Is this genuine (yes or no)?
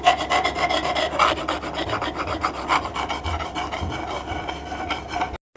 yes